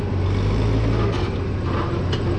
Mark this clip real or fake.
real